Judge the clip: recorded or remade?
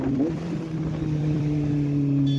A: remade